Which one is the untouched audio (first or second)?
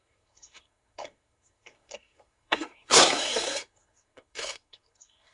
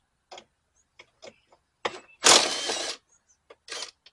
second